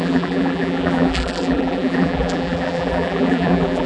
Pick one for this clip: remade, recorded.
remade